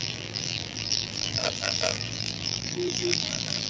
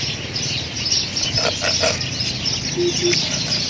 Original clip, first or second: second